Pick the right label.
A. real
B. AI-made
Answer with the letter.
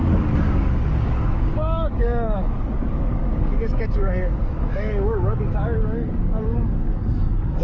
B